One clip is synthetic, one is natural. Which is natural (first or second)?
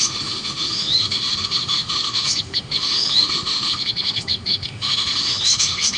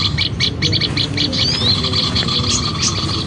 second